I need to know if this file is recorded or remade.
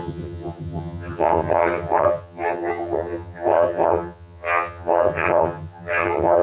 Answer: remade